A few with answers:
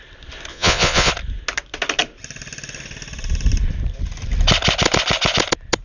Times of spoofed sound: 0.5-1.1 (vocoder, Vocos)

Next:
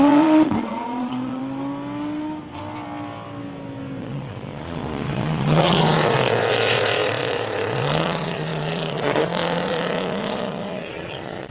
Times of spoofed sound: 0.0-1.4 (vocoder, Vocos); 4.0-11.5